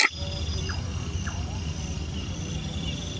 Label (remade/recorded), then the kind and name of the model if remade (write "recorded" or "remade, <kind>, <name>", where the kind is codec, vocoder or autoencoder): recorded